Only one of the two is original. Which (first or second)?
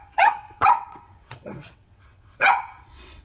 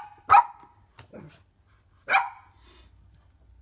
second